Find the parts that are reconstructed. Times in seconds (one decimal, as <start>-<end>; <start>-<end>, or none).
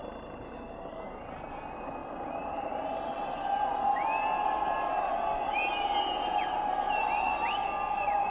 none